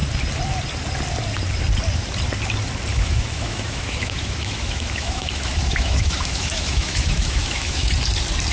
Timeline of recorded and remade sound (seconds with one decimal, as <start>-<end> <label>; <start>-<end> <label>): 0.0-2.9 recorded; 2.9-7.9 remade; 7.9-8.5 recorded